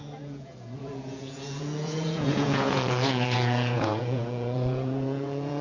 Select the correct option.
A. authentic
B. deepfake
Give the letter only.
B